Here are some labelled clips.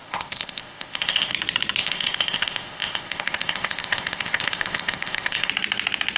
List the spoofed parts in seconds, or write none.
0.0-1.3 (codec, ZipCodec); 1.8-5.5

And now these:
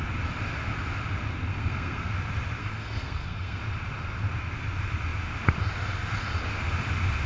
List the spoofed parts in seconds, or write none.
1.5-2.1 (codec, SNAC); 2.6-3.6

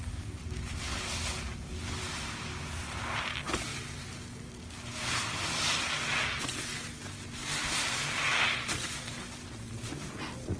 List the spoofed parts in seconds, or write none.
none

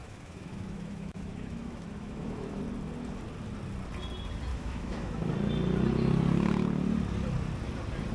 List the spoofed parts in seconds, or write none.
0.0-2.6 (autoencoder, DAC-VAE); 4.5-5.3